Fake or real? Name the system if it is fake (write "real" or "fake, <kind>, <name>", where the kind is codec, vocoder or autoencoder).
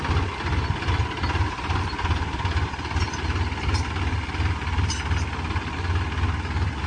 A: real